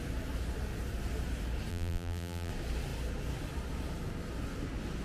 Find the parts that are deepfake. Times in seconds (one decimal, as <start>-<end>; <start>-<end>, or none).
1.7-2.5